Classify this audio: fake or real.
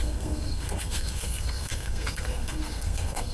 fake